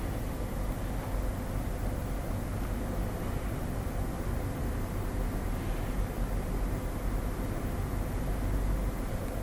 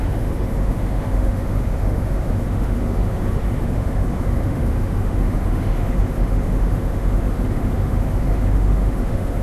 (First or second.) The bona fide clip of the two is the first